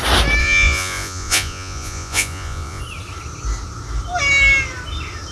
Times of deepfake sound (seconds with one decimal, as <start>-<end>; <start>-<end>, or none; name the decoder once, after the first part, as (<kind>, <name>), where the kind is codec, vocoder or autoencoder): 0.4-2.8 (vocoder, Vocos)